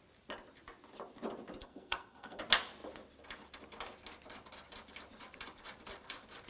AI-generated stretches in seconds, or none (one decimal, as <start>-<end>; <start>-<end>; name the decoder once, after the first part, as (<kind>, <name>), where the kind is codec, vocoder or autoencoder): 1.6-2.4 (codec, SNAC)